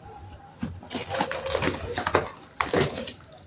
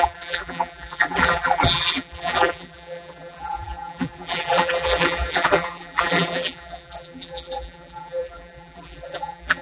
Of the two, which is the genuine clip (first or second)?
first